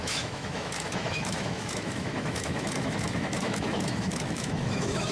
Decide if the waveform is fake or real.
fake